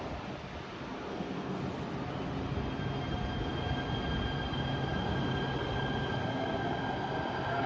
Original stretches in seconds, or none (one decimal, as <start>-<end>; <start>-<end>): 0.0-1.1; 1.6-7.7